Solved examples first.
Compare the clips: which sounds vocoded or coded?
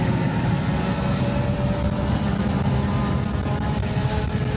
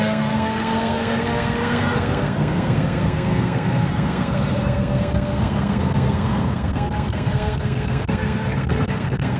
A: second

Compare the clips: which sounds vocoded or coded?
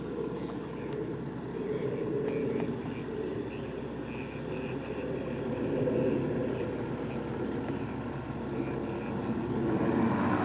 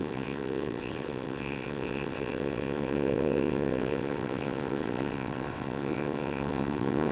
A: second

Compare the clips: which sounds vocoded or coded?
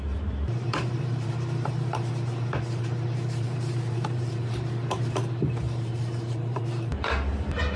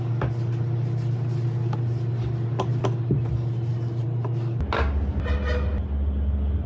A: first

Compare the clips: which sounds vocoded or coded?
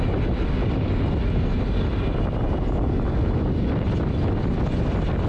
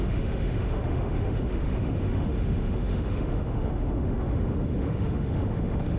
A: second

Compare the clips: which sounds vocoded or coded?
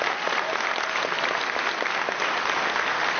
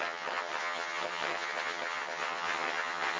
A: second